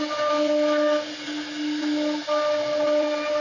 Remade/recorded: recorded